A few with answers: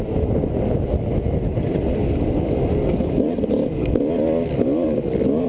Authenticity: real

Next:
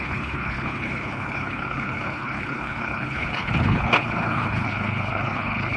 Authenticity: fake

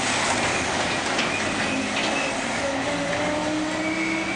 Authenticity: real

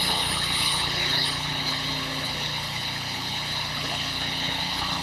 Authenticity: fake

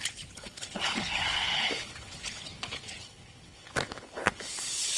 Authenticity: fake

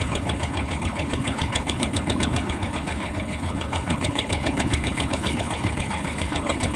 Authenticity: fake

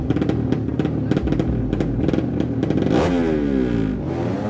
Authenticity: real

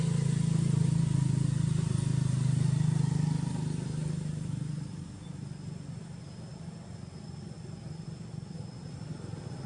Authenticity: real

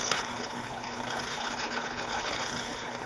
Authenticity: fake